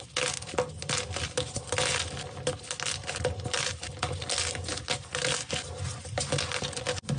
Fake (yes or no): no